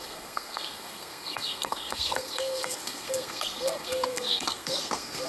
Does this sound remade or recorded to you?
remade